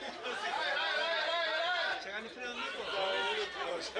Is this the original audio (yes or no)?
yes